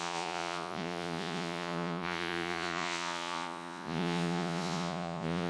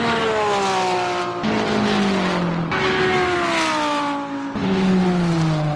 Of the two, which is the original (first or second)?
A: second